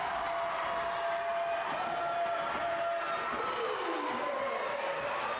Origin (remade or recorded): recorded